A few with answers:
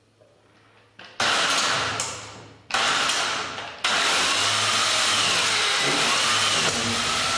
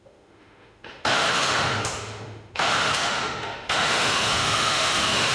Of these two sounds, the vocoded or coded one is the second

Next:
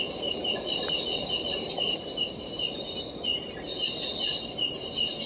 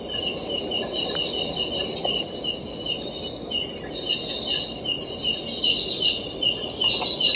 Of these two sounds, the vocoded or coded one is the first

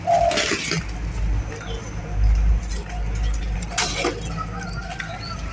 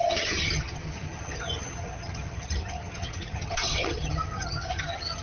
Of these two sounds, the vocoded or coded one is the second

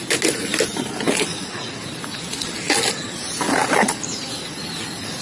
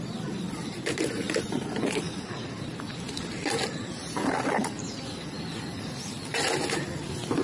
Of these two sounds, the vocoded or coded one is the second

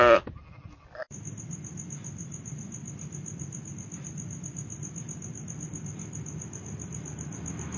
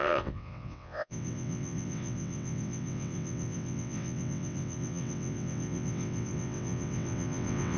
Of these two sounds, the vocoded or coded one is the second